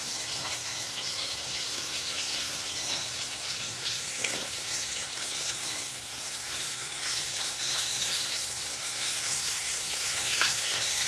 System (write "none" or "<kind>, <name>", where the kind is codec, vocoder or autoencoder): codec, SNAC